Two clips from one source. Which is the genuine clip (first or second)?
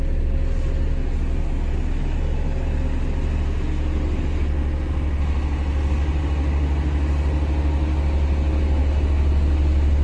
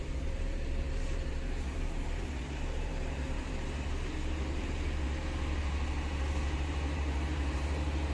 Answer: first